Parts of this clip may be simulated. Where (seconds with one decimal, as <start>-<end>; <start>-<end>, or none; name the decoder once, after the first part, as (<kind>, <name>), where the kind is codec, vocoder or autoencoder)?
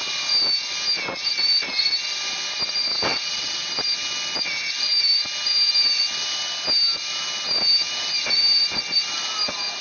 3.1-3.7 (vocoder, WaveNeXt)